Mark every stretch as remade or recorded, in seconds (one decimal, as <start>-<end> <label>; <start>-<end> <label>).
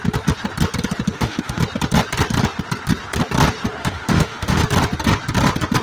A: 0.0-1.1 recorded; 1.1-1.6 remade; 1.6-3.8 recorded; 3.8-4.6 remade; 4.6-5.8 recorded